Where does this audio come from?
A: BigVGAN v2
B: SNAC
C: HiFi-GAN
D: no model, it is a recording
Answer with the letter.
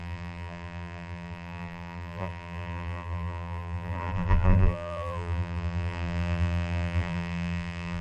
A